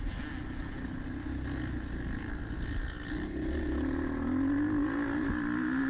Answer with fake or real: real